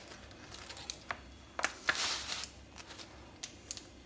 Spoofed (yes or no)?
no